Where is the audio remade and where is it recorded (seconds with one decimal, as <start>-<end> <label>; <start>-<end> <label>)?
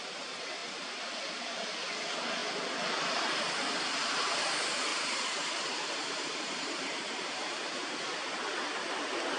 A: 0.0-4.9 recorded; 4.9-7.9 remade; 7.9-9.4 recorded